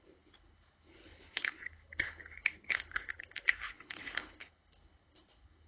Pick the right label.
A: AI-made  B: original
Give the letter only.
A